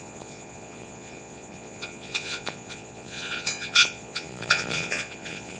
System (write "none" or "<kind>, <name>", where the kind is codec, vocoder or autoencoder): vocoder, Vocos